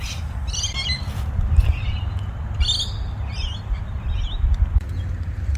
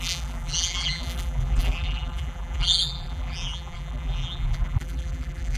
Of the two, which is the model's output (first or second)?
second